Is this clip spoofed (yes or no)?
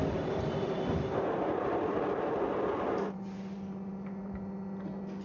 no